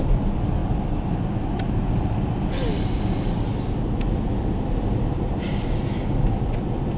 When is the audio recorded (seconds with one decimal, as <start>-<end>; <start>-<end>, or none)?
0.0-7.0